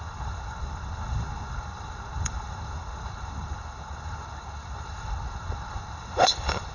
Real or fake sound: fake